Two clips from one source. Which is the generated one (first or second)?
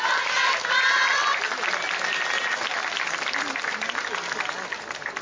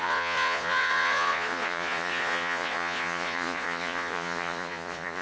second